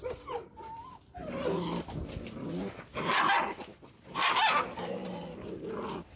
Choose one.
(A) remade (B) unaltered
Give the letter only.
B